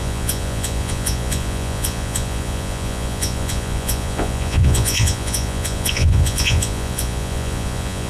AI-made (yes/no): yes